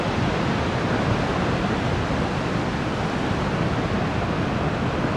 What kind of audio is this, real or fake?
real